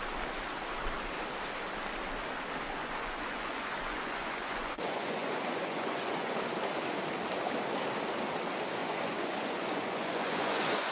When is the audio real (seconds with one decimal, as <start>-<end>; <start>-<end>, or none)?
0.0-2.8; 6.4-8.8